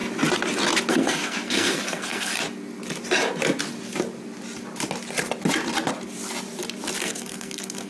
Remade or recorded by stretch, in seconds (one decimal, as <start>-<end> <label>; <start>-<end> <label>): 0.0-0.9 recorded; 0.9-2.3 remade; 2.3-7.0 recorded; 7.0-7.9 remade

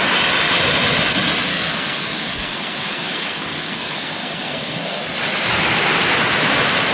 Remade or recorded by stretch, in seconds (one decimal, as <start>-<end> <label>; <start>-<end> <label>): 0.0-1.5 recorded; 1.5-5.0 remade; 5.0-6.9 recorded

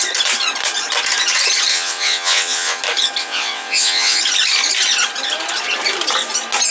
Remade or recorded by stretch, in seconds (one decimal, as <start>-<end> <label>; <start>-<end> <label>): 0.0-1.7 recorded; 1.7-2.8 remade; 2.8-3.2 recorded; 3.2-4.2 remade; 4.2-6.7 recorded

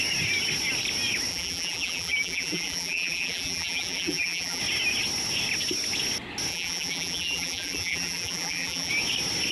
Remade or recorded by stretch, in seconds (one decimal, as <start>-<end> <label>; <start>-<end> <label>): 0.0-1.3 recorded; 1.3-4.6 remade; 4.6-6.5 recorded; 6.5-8.9 remade; 8.9-9.5 recorded